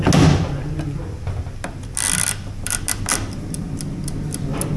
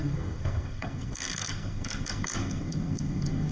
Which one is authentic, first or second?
first